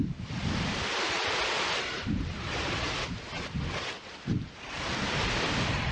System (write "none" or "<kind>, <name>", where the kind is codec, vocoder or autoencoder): none